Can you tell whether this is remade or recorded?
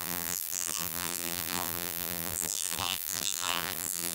remade